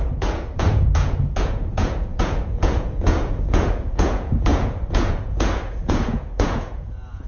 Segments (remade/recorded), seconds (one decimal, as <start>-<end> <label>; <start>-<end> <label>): 0.0-7.3 remade

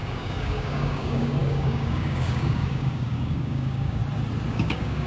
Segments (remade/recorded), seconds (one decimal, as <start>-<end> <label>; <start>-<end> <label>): 0.0-4.0 remade; 4.0-4.5 recorded; 4.5-5.1 remade

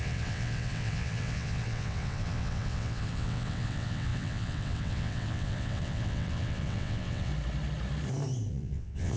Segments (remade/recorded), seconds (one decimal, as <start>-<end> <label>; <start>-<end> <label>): 0.0-7.3 remade; 7.3-8.5 recorded; 8.5-9.2 remade

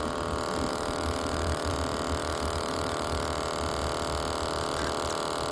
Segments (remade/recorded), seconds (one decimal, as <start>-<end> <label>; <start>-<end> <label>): 0.0-0.7 recorded; 0.7-1.7 remade; 1.7-2.2 recorded; 2.2-3.2 remade; 3.2-5.5 recorded

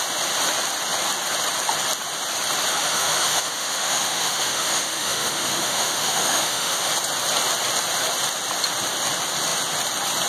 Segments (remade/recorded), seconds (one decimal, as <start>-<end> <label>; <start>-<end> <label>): 0.0-2.7 recorded; 2.7-6.9 remade; 6.9-10.3 recorded

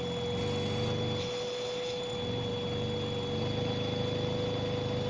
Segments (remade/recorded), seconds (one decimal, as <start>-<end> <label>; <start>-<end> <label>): 0.0-5.1 recorded

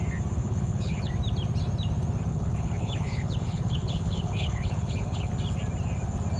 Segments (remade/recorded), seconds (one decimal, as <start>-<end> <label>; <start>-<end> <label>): 0.0-0.4 recorded; 0.4-1.1 remade; 1.1-2.3 recorded; 2.3-5.3 remade; 5.3-6.4 recorded

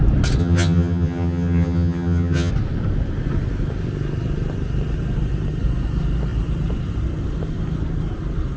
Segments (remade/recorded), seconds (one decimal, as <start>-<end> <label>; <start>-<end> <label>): 0.0-0.4 recorded; 0.4-2.5 remade; 2.5-8.6 recorded